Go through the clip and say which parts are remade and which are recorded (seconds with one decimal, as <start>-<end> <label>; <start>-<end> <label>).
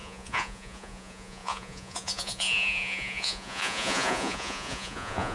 0.0-5.3 remade